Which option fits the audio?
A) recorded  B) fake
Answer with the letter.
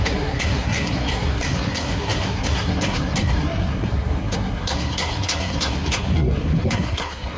B